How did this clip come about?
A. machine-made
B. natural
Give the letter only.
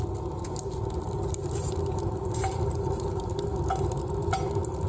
B